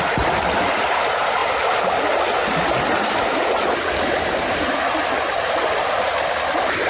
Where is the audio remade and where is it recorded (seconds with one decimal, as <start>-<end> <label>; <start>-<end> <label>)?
0.0-6.9 recorded